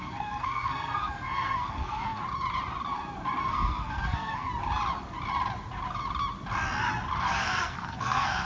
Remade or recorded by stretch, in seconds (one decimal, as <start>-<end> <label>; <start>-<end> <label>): 0.0-2.2 remade; 2.2-3.4 recorded; 3.4-4.5 remade; 4.5-7.2 recorded; 7.2-8.4 remade